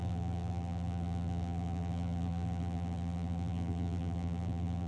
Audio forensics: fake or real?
fake